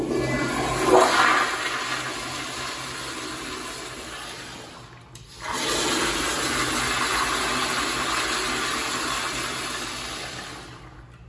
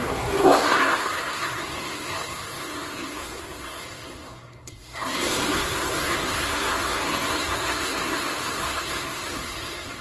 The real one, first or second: first